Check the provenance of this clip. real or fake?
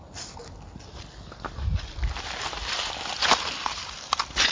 real